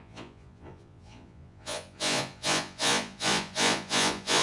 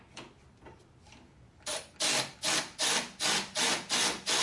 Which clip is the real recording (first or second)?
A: second